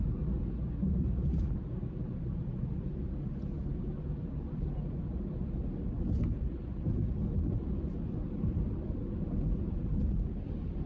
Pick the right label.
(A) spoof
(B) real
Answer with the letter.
B